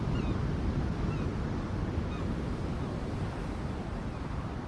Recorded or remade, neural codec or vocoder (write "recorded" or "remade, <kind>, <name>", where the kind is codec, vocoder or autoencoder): recorded